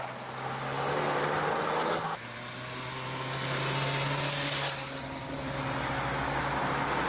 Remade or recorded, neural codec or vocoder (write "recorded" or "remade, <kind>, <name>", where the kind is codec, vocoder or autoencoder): recorded